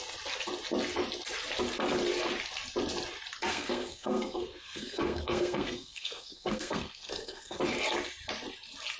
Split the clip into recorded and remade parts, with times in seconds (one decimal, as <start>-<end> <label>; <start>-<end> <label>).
0.0-3.5 recorded; 3.5-7.6 remade; 7.6-9.0 recorded